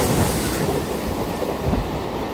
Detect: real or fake real